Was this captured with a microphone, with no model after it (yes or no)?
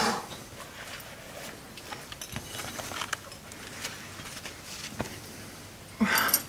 yes